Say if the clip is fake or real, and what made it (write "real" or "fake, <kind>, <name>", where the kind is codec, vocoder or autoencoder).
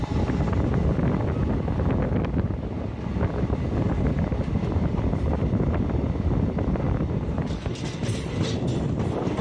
real